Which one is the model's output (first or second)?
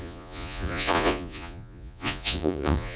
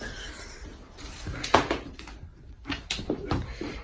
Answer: first